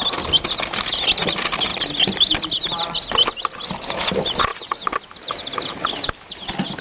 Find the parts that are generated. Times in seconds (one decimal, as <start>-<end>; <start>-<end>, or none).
1.7-2.5